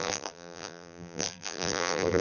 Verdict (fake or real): fake